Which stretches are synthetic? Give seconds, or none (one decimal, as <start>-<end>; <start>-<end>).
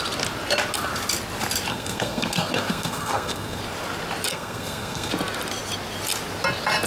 1.7-3.6; 4.3-5.1